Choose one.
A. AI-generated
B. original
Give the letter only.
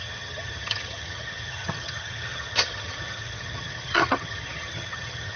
A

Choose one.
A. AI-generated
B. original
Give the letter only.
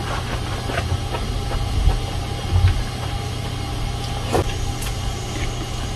B